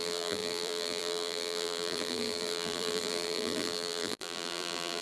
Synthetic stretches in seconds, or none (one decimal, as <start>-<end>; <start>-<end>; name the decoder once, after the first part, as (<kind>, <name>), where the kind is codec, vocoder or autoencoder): 0.0-5.0 (vocoder, BigVGAN v2)